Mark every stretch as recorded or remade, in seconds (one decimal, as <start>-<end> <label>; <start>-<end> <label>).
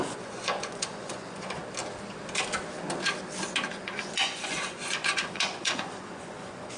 0.0-1.6 remade; 1.6-3.7 recorded; 3.7-6.8 remade